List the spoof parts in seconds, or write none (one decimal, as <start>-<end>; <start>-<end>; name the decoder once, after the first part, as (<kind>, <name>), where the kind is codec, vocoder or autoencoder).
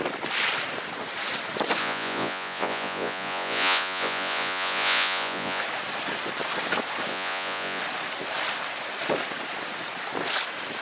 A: 1.8-5.6 (vocoder, Vocos); 7.1-7.8